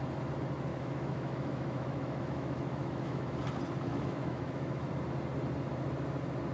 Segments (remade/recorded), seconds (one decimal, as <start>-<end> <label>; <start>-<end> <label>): 0.0-0.7 recorded; 0.7-3.3 remade; 3.3-3.9 recorded; 3.9-4.9 remade; 4.9-6.5 recorded